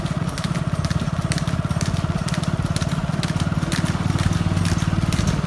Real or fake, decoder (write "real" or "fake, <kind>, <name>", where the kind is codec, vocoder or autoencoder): real